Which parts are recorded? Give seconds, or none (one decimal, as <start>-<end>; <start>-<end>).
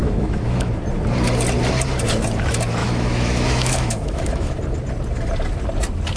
0.7-2.8; 4.5-6.2